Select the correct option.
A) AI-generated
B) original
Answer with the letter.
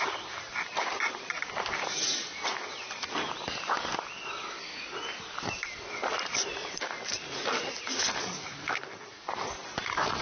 B